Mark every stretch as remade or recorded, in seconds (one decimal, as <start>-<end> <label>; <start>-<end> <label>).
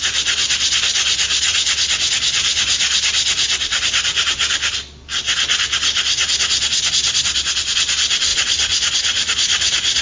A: 0.0-1.5 recorded; 1.5-2.1 remade; 2.1-8.3 recorded; 8.3-10.0 remade